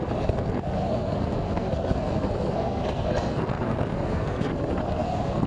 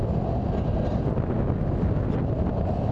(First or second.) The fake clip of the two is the first